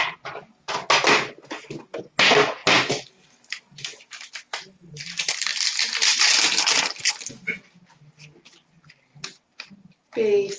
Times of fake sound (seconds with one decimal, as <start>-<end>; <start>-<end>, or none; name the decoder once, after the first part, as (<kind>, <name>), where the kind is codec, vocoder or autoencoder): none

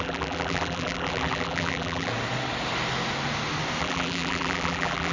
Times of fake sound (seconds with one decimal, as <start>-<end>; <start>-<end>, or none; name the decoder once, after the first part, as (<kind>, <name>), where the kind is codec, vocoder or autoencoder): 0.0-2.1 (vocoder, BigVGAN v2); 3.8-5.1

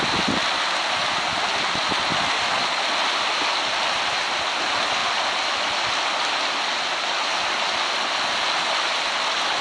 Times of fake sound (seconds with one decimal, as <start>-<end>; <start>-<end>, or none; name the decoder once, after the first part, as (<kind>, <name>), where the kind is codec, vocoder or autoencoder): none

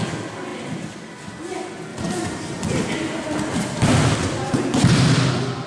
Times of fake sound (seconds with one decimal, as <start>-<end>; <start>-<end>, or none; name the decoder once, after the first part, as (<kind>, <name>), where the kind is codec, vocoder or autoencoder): 0.5-1.2 (vocoder, BigVGAN v2); 1.9-5.3

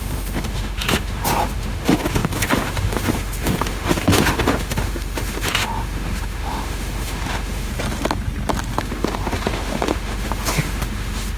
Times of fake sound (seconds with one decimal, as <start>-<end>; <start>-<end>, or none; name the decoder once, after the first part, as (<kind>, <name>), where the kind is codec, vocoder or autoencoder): 0.0-7.7 (autoencoder, DAC-VAE); 8.8-11.4

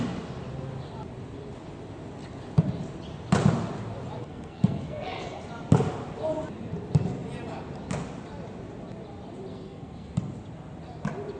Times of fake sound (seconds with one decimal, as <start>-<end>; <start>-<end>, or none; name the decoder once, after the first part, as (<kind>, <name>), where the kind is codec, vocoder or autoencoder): 4.2-5.4 (codec, SNAC); 9.5-10.1